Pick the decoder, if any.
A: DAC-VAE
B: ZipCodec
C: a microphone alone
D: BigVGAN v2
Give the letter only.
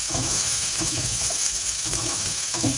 A